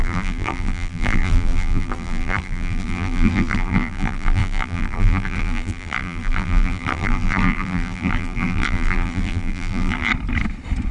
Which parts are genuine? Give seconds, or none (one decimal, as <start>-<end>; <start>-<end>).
10.1-10.9